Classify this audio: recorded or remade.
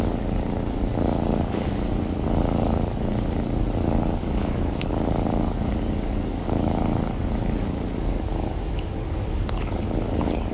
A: remade